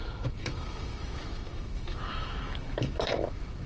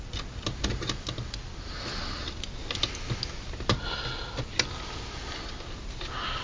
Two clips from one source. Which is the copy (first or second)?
first